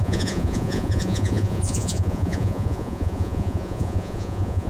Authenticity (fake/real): fake